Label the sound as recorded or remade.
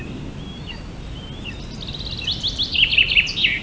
recorded